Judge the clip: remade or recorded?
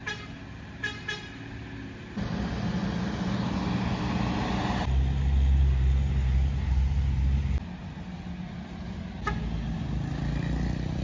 recorded